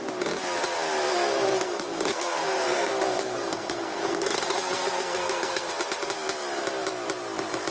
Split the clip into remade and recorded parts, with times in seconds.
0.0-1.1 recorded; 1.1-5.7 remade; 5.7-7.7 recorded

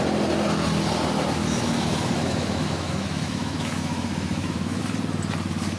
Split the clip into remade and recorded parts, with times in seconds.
0.0-1.4 recorded; 1.4-4.8 remade; 4.8-5.8 recorded

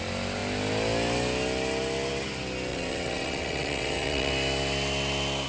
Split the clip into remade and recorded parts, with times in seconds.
0.0-2.7 recorded; 2.7-4.3 remade; 4.3-5.5 recorded

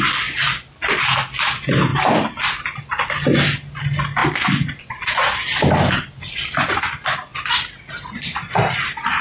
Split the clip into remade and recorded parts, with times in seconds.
0.0-5.5 recorded; 5.5-6.4 remade; 6.4-9.2 recorded

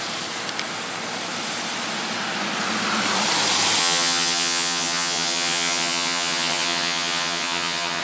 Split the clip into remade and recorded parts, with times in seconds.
0.0-3.8 recorded; 3.8-8.0 remade

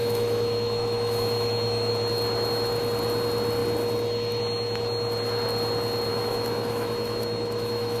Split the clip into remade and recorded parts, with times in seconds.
0.0-1.9 remade; 1.9-6.1 recorded; 6.1-8.0 remade

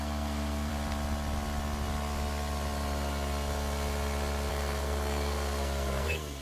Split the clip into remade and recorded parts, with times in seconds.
0.0-0.7 remade; 0.7-4.5 recorded; 4.5-6.4 remade

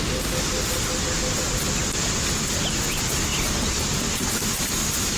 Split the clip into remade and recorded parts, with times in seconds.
0.0-5.2 recorded